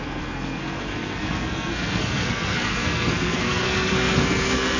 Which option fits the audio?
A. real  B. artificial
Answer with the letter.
B